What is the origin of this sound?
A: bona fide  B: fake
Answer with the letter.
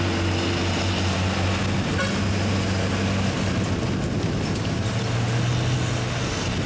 A